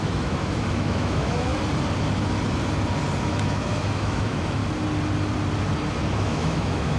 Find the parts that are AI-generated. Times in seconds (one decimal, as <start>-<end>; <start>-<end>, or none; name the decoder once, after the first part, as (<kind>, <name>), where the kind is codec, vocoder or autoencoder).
0.0-1.5 (autoencoder, DAC-VAE); 3.2-4.6; 6.2-7.0